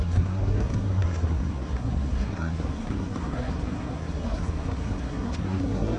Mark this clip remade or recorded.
remade